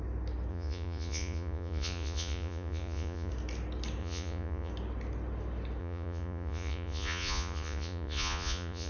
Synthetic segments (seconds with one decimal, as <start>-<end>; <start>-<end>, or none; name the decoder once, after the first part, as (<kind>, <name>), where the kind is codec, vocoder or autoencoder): 0.5-3.3 (vocoder, Vocos); 4.0-4.7; 5.8-8.9